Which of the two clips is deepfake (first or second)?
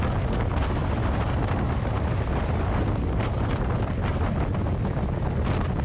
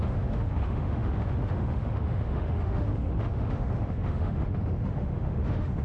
second